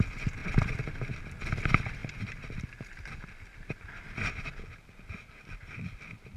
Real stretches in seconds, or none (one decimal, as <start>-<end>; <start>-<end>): 0.0-6.4

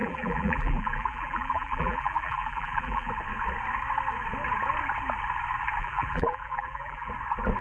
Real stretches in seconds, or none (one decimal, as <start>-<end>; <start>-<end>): 3.1-5.8; 7.1-7.6

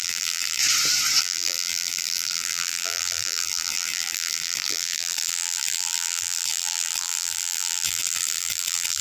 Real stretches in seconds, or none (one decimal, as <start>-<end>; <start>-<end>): 0.6-1.2